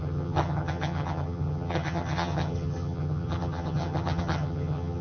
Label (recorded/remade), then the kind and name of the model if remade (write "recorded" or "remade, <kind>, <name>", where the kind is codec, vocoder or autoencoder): remade, vocoder, HiFi-GAN